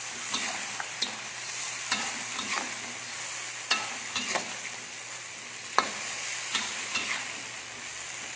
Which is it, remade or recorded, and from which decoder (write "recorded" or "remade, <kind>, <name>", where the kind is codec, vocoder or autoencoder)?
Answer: recorded